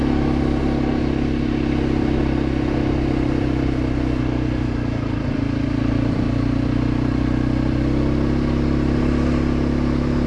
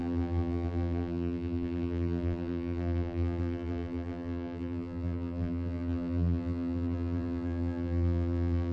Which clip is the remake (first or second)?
second